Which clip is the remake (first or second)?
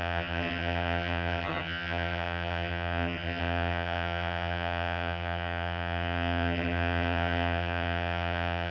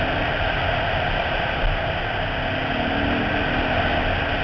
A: first